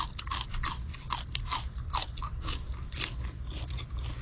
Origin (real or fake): real